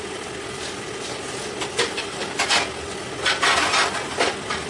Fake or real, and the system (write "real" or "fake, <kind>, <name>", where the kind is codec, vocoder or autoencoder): real